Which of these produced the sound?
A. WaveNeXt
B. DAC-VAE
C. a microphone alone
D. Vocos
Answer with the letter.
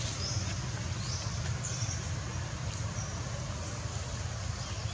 C